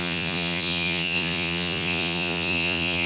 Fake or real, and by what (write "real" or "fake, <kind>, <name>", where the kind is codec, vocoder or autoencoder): fake, vocoder, Vocos